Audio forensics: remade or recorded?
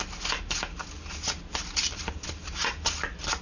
recorded